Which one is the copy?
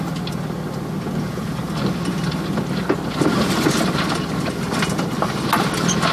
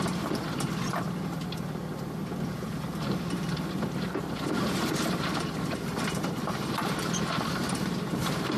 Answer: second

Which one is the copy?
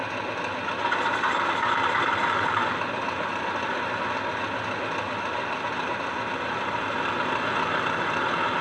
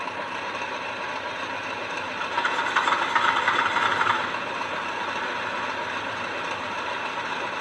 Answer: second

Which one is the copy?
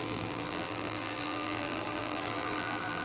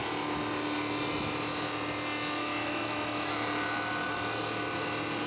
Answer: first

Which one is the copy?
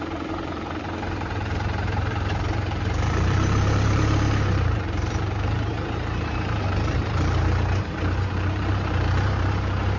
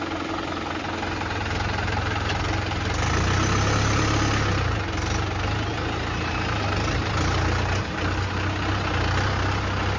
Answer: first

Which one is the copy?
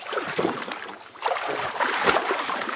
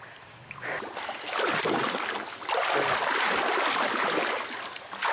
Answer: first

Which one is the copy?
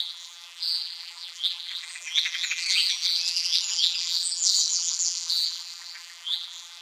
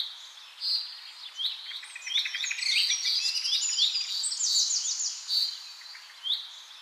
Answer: first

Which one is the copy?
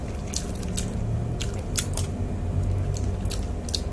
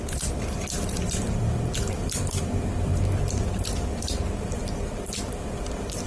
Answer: second